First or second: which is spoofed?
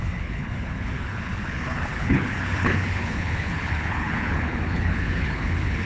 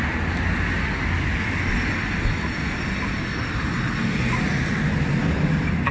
first